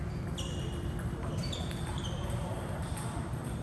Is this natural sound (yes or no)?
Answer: no